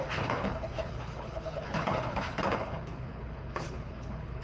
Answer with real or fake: fake